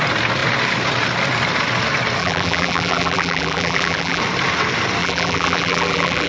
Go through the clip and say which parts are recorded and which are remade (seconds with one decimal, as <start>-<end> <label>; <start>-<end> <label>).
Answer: 0.0-2.2 recorded; 2.2-4.2 remade; 4.2-5.0 recorded; 5.0-6.3 remade